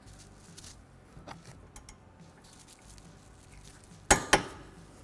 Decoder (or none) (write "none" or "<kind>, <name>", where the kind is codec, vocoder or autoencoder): none